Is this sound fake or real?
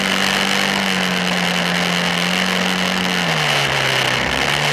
real